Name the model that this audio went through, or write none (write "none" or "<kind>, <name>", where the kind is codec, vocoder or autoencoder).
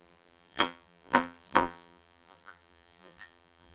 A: vocoder, BigVGAN v2